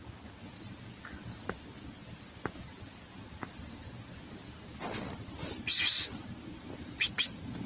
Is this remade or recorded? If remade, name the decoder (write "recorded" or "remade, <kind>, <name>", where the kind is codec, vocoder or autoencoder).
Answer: recorded